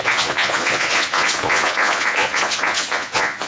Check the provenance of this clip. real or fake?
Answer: fake